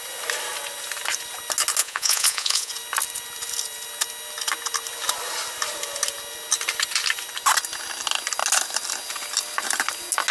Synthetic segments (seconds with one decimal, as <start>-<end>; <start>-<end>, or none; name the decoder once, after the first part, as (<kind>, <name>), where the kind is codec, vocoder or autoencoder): 1.8-2.7 (vocoder, Vocos)